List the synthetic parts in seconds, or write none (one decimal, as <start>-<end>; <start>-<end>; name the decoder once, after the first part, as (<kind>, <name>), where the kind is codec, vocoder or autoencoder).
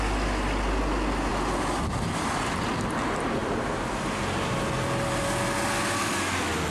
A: none